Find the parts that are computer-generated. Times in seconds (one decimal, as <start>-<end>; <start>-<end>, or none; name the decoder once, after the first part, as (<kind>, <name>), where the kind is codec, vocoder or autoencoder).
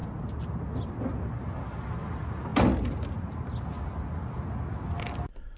none